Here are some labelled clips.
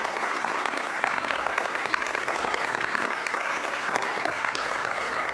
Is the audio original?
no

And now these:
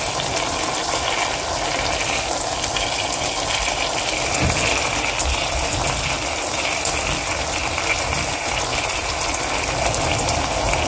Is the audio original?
yes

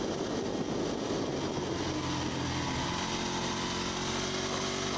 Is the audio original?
yes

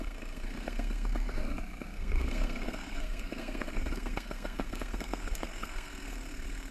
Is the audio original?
no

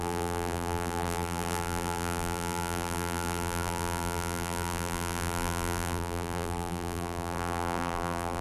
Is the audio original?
no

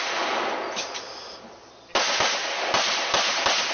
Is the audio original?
yes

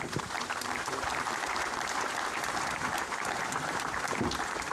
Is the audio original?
no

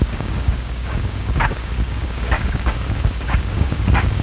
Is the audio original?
no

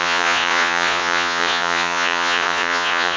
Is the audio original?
no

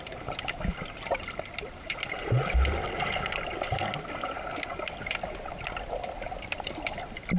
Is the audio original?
yes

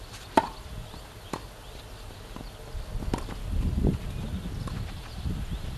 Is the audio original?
yes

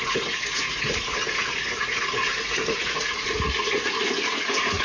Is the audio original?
no